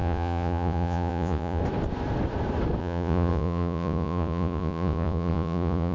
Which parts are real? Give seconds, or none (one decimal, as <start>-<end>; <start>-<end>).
1.6-2.8